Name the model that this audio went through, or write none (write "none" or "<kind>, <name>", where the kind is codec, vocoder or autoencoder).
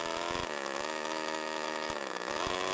autoencoder, DAC-VAE